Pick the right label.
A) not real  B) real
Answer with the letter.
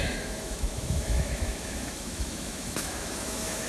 A